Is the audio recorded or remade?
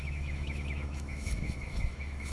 remade